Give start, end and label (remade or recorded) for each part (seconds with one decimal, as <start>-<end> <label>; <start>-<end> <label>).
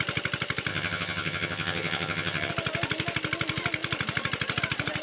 0.0-0.7 recorded; 0.7-2.5 remade; 2.5-5.0 recorded